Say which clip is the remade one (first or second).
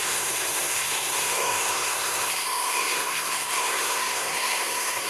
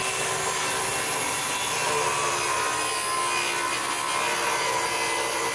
first